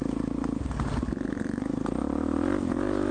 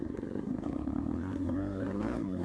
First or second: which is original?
first